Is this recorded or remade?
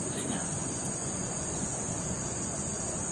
remade